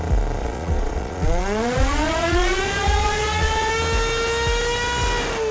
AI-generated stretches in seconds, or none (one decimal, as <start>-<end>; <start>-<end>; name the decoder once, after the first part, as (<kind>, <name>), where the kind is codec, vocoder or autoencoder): 0.4-3.7 (vocoder, Vocos)